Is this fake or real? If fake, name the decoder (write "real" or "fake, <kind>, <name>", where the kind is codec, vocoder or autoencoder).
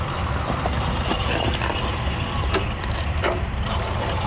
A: real